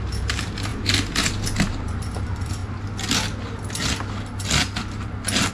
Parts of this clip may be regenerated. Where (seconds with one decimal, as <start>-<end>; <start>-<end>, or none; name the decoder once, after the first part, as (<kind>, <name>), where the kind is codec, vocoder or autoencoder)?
0.0-0.7 (vocoder, BigVGAN v2); 1.7-2.6